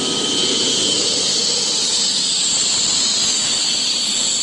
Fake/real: real